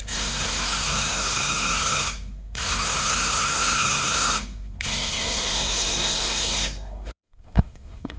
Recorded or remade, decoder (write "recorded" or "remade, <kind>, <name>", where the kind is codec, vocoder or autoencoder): remade, codec, SNAC